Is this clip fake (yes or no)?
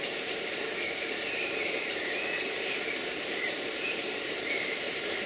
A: yes